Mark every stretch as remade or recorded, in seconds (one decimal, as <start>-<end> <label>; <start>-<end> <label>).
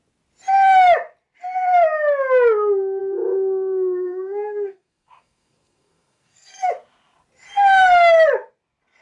0.0-3.0 recorded; 3.0-6.7 remade; 6.7-9.0 recorded